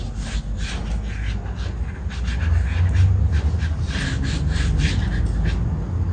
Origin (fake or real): real